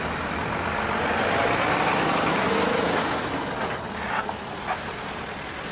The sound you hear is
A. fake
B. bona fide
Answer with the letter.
B